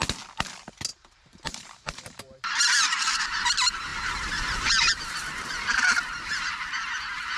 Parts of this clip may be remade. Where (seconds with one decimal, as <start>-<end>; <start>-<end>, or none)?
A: 0.9-3.2; 3.9-6.4